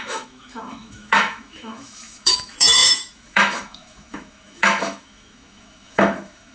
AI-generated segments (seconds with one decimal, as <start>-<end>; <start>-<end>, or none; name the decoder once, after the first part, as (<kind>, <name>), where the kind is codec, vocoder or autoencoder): 0.0-6.5 (autoencoder, DAC-VAE)